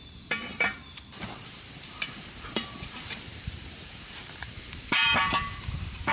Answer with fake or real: fake